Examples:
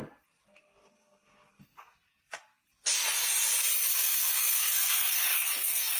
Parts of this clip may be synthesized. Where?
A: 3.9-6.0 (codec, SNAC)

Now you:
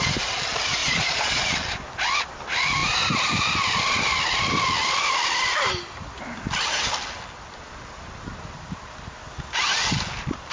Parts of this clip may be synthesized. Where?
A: 0.8-1.4 (vocoder, Vocos)

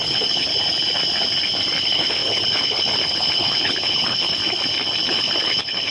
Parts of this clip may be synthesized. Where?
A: 0.0-0.5 (codec, HILCodec); 1.8-4.4; 5.1-5.9

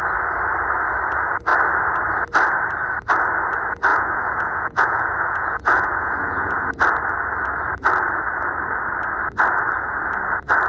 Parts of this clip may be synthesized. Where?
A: 3.9-6.7 (vocoder, Vocos)

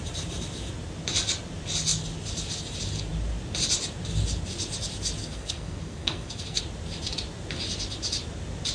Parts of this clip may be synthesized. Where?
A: 5.2-6.6 (codec, SNAC)

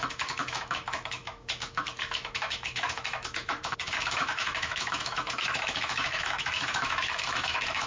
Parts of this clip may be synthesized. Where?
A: 0.0-7.9 (autoencoder, DAC-VAE)